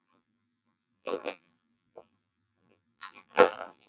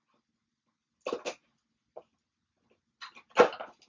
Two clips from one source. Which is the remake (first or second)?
first